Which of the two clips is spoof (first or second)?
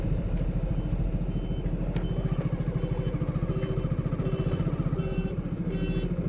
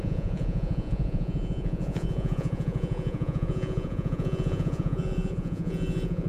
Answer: second